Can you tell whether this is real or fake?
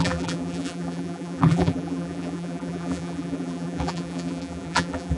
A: fake